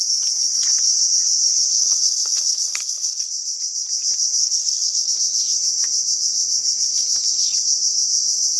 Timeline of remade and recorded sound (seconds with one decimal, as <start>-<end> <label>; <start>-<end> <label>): 0.0-1.7 recorded; 1.7-3.3 remade; 3.3-4.4 recorded; 4.4-5.1 remade; 5.1-8.6 recorded